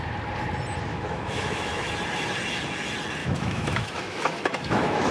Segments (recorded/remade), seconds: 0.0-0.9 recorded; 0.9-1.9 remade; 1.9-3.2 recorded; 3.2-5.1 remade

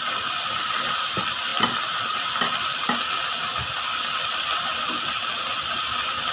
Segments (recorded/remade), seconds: 0.0-6.3 recorded

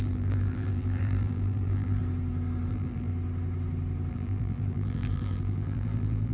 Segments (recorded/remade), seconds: 0.0-2.0 remade; 2.0-2.7 recorded; 2.7-3.1 remade; 3.1-4.1 recorded; 4.1-6.3 remade

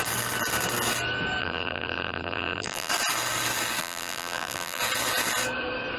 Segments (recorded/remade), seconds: 0.0-1.4 recorded; 1.4-2.9 remade; 2.9-3.8 recorded; 3.8-4.8 remade; 4.8-6.0 recorded